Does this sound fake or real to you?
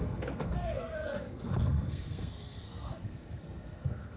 fake